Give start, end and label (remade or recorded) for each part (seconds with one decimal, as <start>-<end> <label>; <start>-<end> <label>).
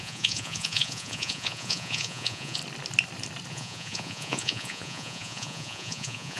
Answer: 0.0-2.6 remade; 2.6-3.5 recorded; 3.5-6.4 remade